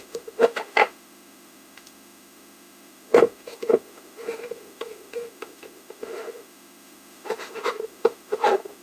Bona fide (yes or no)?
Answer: no